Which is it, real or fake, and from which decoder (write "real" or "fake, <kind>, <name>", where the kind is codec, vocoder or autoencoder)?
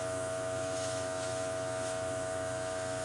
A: fake, autoencoder, DAC-VAE